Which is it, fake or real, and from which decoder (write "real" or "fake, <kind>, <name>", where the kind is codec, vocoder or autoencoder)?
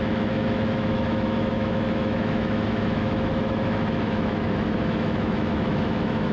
fake, autoencoder, DAC-VAE